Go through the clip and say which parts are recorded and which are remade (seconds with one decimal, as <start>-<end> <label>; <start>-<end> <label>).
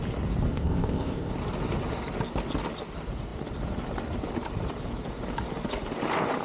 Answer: 0.0-0.5 recorded; 0.5-1.3 remade; 1.3-6.4 recorded